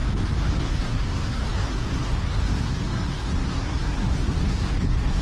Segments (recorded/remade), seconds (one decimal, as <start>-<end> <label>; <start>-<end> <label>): 0.0-0.6 recorded; 0.6-5.2 remade